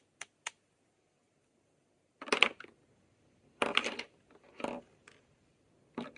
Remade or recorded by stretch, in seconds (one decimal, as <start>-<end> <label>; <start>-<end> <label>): 0.0-6.2 recorded